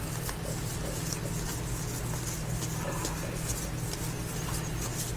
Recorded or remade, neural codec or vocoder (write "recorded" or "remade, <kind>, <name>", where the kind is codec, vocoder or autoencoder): recorded